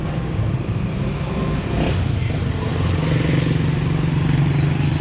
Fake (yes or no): no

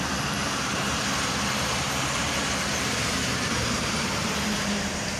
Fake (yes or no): yes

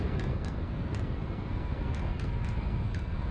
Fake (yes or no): yes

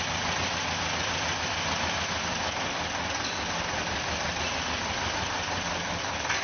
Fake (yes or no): no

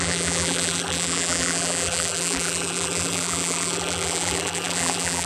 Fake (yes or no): yes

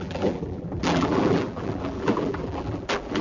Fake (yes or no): yes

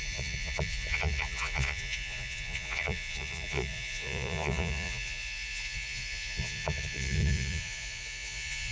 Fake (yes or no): yes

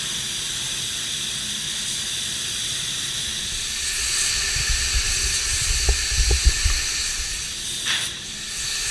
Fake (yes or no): no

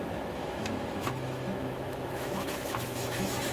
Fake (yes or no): yes